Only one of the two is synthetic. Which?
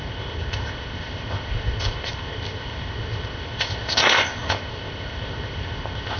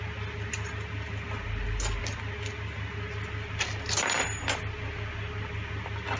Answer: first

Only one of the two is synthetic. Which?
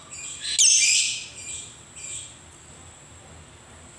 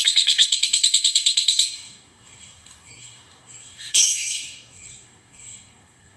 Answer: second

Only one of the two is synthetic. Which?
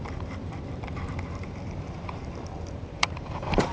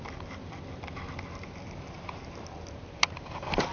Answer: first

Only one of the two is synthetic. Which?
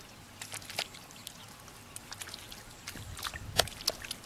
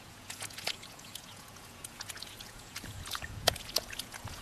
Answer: second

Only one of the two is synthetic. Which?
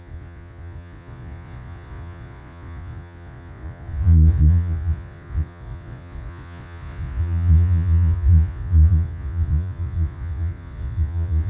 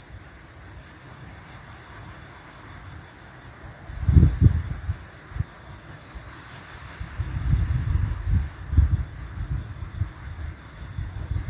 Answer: first